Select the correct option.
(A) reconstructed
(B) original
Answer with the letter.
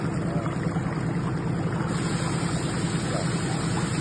B